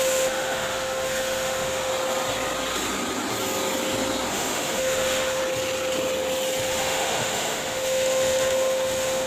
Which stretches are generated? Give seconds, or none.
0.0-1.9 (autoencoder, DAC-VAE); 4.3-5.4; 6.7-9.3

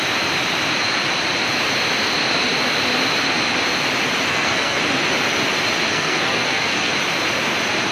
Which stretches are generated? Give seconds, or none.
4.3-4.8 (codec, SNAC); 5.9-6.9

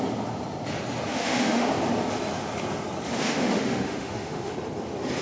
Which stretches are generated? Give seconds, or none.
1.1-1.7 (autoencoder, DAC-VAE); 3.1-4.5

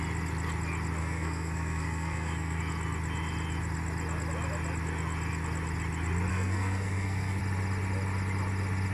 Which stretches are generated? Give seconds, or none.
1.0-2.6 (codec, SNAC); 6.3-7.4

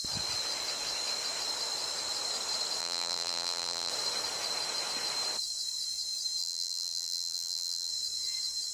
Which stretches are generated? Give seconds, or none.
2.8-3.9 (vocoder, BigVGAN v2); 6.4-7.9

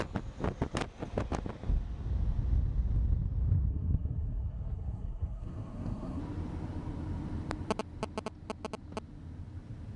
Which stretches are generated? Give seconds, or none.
3.7-6.2 (codec, SNAC)